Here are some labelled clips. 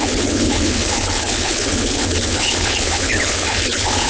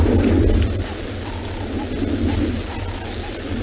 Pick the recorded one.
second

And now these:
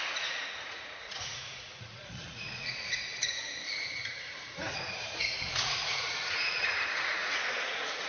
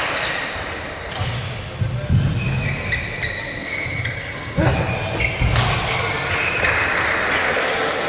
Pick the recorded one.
second